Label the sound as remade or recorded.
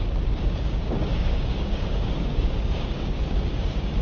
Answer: remade